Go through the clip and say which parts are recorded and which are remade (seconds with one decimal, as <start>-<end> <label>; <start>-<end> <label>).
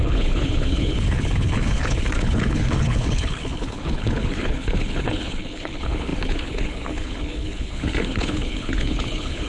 0.0-9.5 remade